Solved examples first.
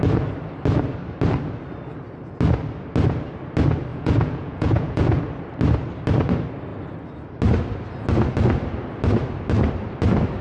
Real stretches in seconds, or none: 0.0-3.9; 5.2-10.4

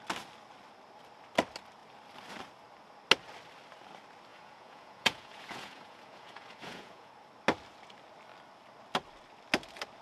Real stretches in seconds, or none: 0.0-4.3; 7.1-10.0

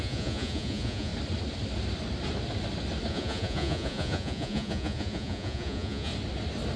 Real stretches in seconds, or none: 1.1-3.1; 6.1-6.8